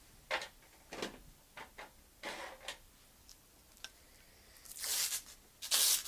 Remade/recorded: recorded